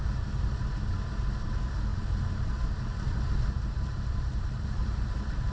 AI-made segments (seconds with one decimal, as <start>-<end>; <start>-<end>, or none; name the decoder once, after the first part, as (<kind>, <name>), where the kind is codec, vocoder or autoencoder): none